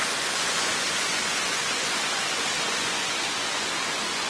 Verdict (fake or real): fake